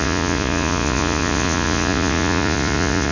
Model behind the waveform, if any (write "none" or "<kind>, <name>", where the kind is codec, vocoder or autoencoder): vocoder, Vocos